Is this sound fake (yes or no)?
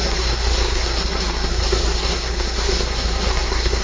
yes